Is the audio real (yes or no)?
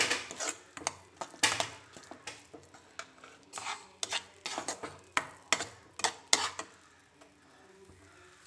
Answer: yes